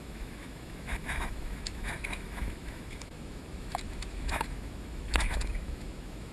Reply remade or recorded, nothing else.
remade